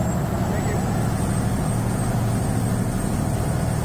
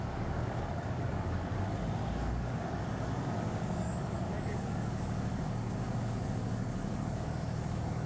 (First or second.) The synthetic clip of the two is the second